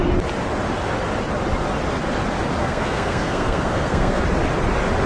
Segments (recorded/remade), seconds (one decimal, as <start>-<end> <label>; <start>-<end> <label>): 0.0-2.6 recorded; 2.6-4.2 remade; 4.2-5.1 recorded